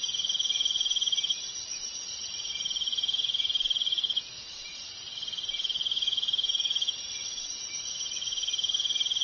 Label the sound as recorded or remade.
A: remade